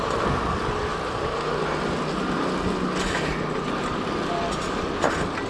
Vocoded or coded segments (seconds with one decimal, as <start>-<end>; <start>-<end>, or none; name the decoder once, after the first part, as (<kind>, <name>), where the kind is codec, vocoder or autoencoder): none